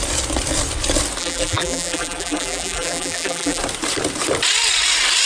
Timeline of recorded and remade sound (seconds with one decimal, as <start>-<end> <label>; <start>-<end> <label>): 0.0-1.2 recorded; 1.2-3.6 remade; 3.6-5.3 recorded